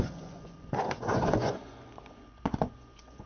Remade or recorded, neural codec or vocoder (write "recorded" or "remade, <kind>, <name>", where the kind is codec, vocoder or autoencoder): remade, vocoder, Vocos